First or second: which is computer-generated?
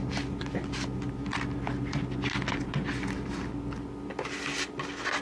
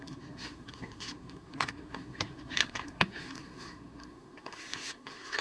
second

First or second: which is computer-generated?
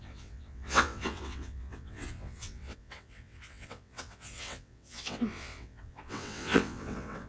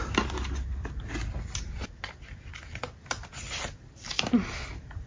first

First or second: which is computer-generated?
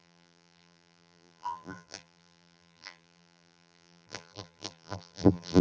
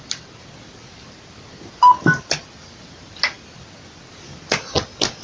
first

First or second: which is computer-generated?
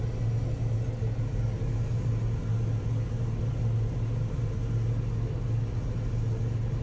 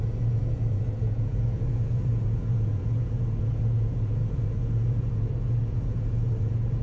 second